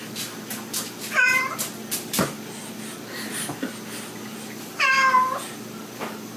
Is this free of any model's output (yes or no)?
yes